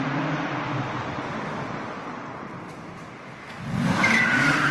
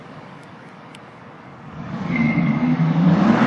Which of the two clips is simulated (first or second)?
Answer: second